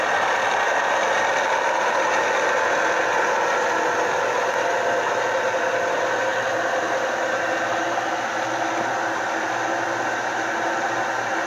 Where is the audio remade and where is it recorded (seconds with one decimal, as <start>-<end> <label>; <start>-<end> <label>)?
0.0-6.3 recorded; 6.3-7.5 remade; 7.5-11.5 recorded